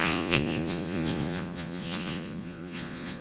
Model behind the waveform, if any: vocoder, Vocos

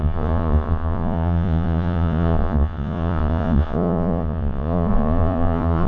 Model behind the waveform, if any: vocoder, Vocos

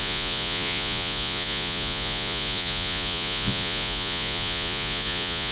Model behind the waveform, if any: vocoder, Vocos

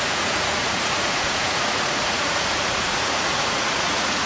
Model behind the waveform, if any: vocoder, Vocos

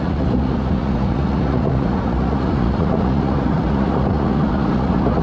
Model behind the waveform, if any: vocoder, Vocos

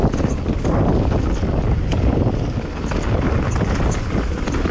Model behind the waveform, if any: none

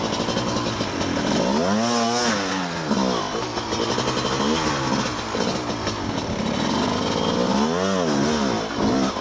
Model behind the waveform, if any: none